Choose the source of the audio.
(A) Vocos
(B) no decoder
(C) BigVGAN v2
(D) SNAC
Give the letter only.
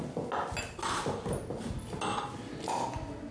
B